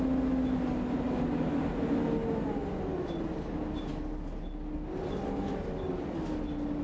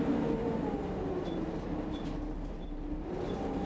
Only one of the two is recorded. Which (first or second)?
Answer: first